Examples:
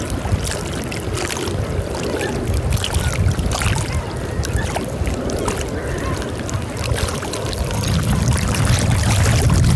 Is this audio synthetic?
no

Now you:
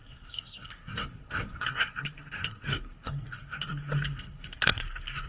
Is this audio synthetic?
yes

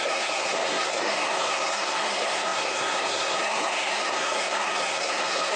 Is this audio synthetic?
yes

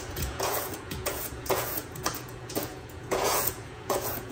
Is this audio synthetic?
yes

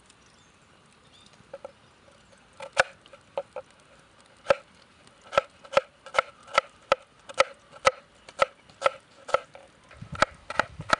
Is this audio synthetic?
no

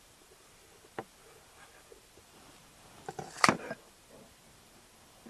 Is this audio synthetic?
yes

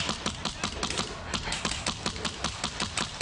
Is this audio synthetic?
no